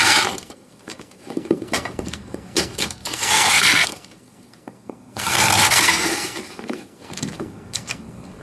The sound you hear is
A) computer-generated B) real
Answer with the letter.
A